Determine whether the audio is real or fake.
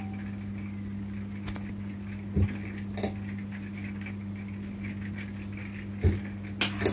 real